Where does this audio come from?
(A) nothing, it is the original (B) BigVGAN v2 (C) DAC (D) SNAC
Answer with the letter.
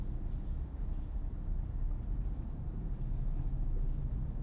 A